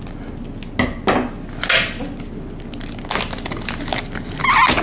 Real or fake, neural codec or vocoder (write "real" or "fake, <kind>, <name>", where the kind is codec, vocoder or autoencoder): real